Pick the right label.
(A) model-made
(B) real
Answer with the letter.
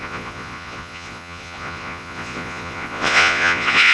A